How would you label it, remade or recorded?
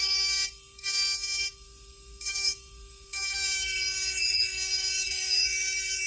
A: remade